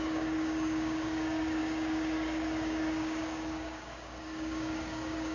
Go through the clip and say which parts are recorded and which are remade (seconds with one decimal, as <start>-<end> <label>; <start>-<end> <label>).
0.0-5.3 remade